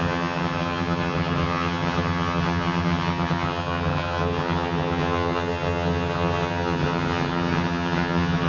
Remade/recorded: remade